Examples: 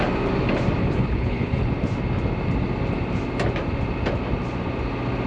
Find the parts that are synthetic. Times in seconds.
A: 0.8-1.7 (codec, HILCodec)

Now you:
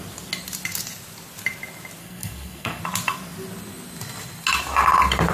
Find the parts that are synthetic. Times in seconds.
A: 2.0-2.8 (codec, SNAC)

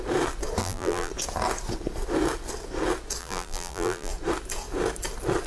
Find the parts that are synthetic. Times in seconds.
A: 0.6-1.1 (vocoder, BigVGAN v2); 3.2-4.1